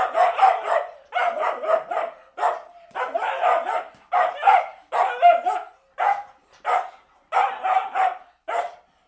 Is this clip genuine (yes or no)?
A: yes